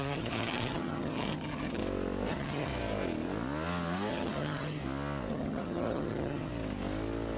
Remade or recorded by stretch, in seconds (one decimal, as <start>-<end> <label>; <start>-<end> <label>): 0.0-1.8 remade; 1.8-2.3 recorded; 2.3-2.7 remade; 2.7-4.1 recorded; 4.1-4.8 remade; 4.8-5.3 recorded; 5.3-6.5 remade; 6.5-7.4 recorded